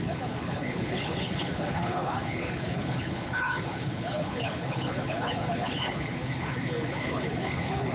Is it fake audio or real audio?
fake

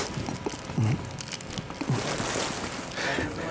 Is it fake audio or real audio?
real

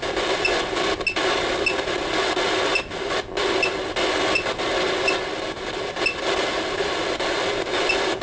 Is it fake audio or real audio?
real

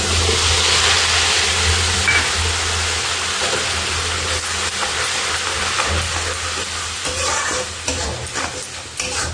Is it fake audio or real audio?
real